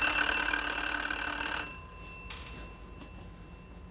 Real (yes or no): yes